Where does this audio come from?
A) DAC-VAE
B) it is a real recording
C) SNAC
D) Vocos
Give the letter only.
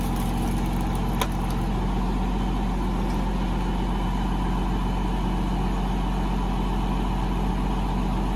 B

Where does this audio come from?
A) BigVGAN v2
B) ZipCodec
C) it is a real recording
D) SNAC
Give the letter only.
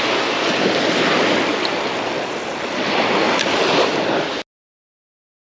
C